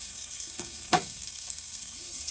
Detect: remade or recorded remade